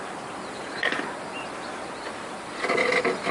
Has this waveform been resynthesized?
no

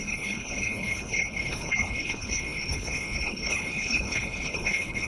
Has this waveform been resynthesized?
yes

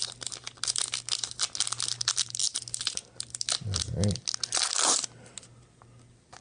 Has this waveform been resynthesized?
no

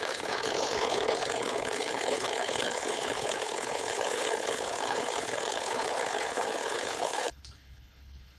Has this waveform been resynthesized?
yes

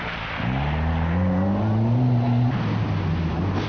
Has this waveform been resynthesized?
no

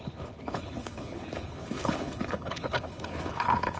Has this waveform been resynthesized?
yes